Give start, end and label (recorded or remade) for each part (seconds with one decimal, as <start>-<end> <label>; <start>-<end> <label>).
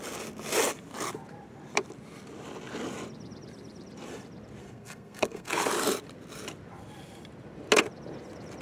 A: 0.0-4.6 recorded; 4.6-5.5 remade; 5.5-8.6 recorded